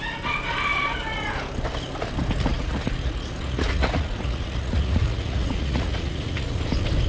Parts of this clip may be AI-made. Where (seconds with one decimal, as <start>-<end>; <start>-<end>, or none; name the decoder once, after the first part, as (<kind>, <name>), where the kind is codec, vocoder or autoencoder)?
2.5-6.6 (vocoder, Vocos)